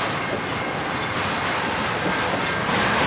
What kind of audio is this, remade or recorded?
recorded